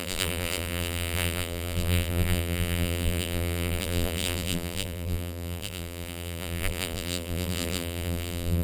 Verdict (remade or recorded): remade